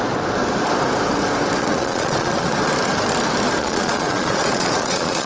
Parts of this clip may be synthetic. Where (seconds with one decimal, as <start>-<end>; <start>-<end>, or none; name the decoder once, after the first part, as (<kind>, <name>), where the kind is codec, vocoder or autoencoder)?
1.6-2.6 (vocoder, Vocos); 3.6-5.3